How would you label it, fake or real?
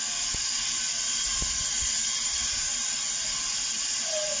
real